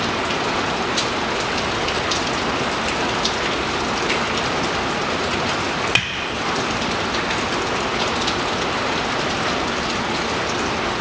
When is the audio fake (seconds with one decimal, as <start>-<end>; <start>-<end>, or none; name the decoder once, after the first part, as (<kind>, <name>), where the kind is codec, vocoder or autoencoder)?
none